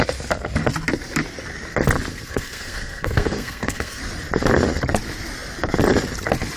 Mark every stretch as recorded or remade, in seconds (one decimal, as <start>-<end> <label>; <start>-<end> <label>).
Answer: 0.0-2.1 recorded; 2.1-4.0 remade; 4.0-6.6 recorded